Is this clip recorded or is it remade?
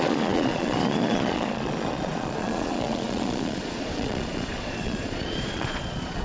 remade